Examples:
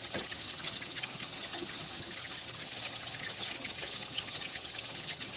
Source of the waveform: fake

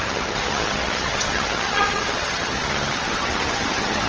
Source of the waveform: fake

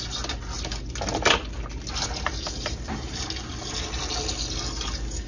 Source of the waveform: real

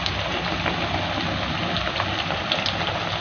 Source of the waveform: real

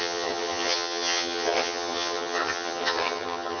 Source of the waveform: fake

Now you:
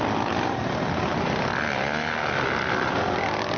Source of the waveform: real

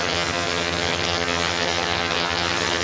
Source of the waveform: fake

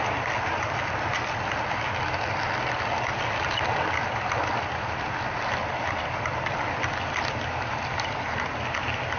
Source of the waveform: real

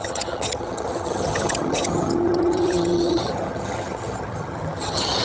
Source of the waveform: fake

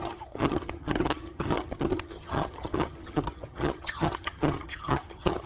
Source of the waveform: fake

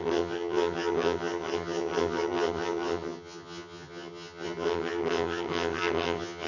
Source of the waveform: fake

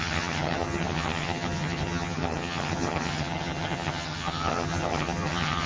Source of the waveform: fake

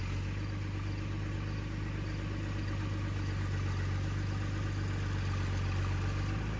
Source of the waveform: real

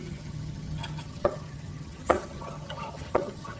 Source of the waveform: fake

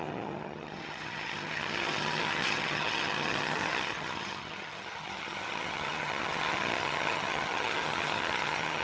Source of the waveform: fake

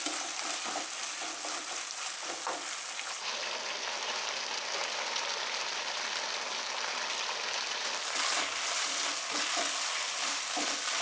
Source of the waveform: real